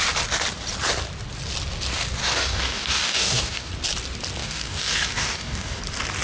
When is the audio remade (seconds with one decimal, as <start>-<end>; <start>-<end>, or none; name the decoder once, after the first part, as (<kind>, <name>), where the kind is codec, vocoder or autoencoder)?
2.2-3.7 (codec, DAC); 4.4-5.8